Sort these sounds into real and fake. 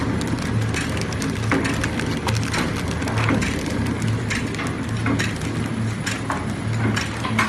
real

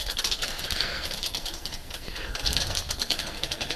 fake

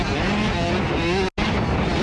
real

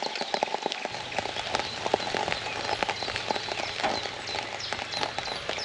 real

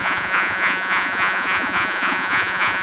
fake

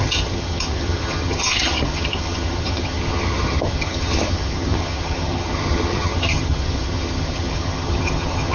fake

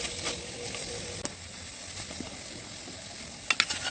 real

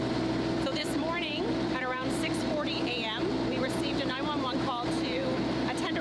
fake